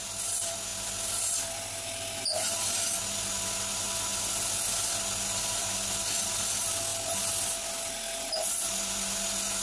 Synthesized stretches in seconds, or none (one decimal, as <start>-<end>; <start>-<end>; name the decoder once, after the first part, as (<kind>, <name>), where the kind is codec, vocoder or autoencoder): none